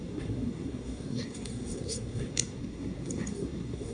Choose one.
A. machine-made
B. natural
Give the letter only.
A